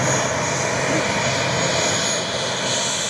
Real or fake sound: real